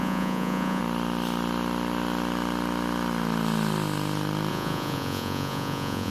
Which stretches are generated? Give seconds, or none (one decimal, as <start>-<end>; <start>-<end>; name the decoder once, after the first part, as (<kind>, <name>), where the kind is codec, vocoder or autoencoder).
0.0-0.8 (vocoder, Vocos); 4.5-6.1